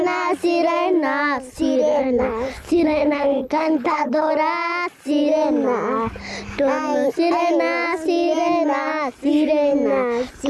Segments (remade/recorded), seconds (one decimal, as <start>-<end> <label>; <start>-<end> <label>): 0.0-1.9 recorded; 1.9-4.3 remade; 4.3-10.5 recorded